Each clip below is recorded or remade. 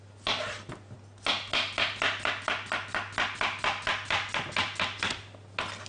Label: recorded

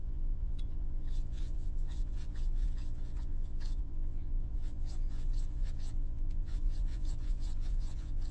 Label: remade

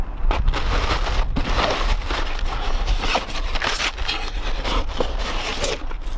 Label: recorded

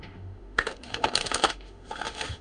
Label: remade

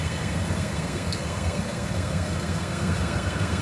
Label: remade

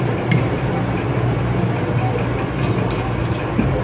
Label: recorded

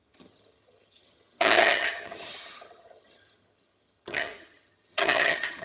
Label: remade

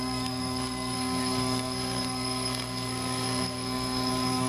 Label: remade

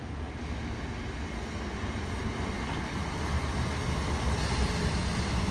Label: recorded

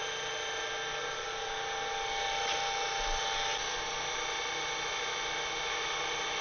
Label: recorded